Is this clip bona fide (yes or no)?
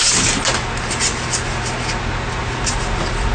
yes